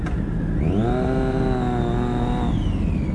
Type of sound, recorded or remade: recorded